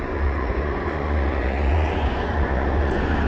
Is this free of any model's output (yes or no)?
no